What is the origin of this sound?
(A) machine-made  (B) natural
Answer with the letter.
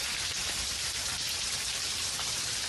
A